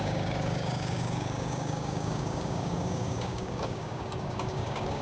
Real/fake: fake